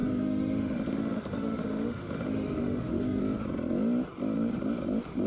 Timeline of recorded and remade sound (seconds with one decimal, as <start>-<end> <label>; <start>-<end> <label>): 0.0-3.2 remade; 3.2-5.3 recorded